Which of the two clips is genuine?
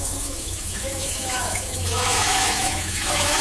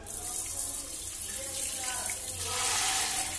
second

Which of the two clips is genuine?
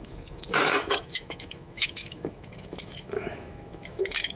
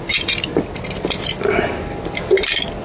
second